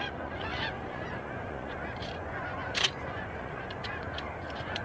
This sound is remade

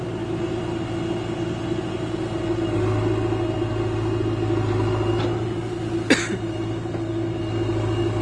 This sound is recorded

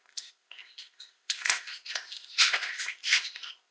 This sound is remade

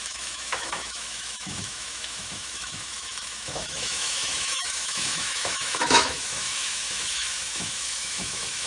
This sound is remade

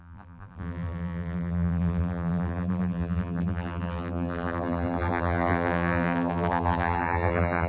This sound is remade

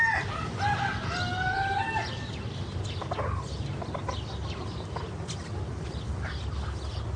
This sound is recorded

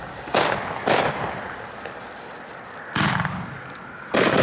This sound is recorded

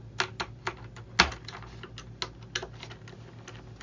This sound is recorded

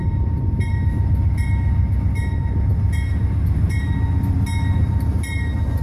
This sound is recorded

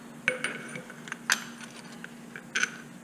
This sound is recorded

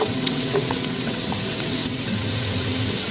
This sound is remade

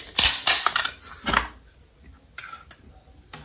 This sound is recorded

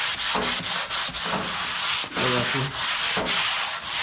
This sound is recorded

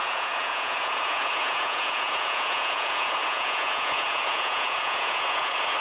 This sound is remade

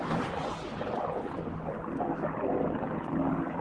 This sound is remade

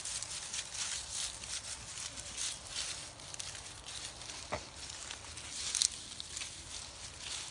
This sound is recorded